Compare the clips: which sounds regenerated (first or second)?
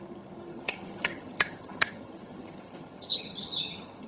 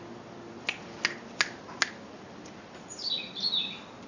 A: first